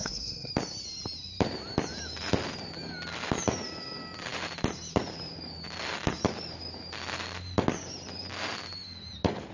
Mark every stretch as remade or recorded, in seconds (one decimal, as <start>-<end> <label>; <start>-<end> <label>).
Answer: 0.0-0.5 remade; 0.5-9.5 recorded